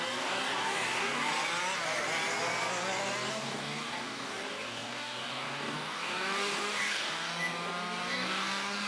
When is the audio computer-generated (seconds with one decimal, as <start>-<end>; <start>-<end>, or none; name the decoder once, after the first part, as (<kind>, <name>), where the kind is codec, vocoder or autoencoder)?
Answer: 0.0-1.3 (codec, DAC); 3.3-7.3; 8.1-8.9